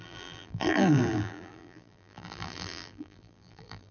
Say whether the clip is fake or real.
fake